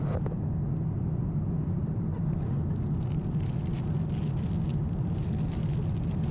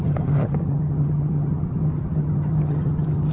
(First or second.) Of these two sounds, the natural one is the first